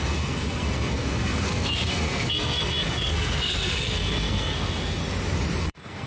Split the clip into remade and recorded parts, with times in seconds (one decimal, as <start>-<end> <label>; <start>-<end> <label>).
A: 0.0-5.0 remade; 5.0-5.6 recorded; 5.6-6.1 remade